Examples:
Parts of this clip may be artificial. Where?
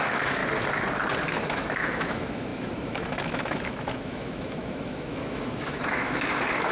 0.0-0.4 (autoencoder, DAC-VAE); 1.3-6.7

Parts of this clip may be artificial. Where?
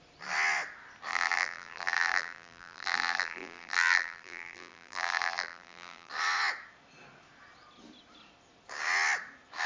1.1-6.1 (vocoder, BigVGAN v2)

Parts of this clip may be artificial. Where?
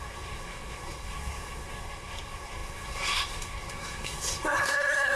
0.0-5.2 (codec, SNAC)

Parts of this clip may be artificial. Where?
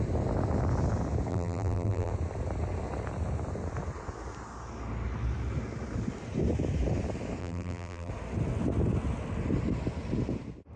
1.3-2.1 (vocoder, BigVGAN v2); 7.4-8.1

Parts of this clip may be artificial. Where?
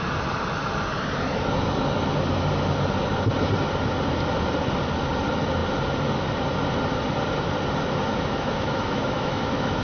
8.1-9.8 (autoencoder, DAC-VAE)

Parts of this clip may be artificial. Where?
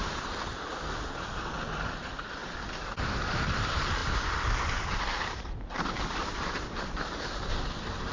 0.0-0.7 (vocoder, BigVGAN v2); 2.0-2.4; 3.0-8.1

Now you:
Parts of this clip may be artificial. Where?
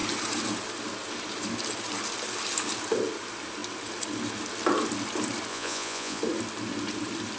5.5-6.2 (vocoder, Vocos)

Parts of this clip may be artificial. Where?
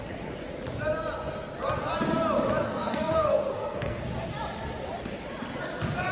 2.6-4.0 (codec, SNAC)